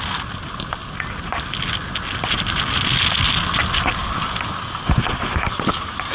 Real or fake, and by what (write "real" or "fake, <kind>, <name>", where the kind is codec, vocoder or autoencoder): real